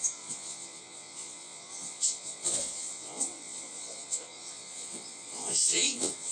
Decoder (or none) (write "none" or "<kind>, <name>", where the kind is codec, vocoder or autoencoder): vocoder, Vocos